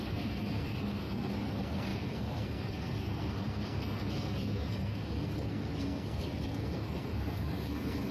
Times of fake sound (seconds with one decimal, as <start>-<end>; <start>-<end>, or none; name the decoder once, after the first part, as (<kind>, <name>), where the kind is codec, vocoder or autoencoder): 0.0-8.1 (codec, SNAC)